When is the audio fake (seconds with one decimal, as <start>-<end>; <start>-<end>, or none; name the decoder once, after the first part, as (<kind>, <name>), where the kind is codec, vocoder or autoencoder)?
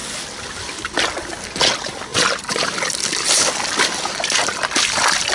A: none